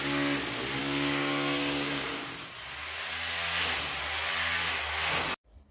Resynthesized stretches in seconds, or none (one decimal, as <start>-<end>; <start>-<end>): 0.8-2.2